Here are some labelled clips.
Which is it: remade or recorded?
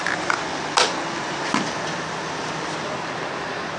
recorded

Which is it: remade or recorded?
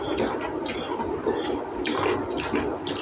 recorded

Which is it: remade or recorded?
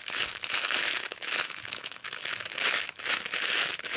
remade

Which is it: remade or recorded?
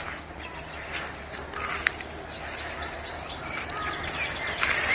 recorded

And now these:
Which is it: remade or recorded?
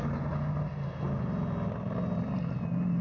recorded